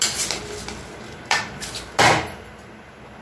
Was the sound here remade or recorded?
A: recorded